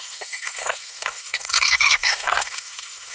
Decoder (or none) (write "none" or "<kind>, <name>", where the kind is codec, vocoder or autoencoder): codec, SNAC